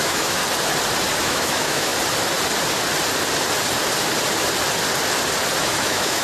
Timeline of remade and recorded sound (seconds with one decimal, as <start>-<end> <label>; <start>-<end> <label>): 0.0-0.4 remade; 0.4-1.2 recorded; 1.2-1.9 remade; 1.9-5.6 recorded; 5.6-6.2 remade